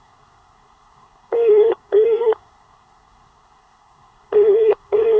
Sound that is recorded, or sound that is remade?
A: remade